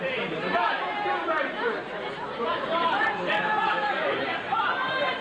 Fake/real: fake